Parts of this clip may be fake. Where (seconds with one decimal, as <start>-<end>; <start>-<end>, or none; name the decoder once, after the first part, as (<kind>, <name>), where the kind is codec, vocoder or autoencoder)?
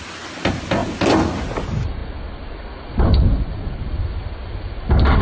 none